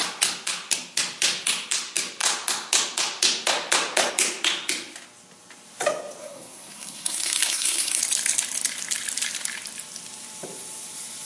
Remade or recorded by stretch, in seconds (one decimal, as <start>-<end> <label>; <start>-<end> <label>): 0.0-6.2 recorded; 6.2-8.0 remade; 8.0-11.2 recorded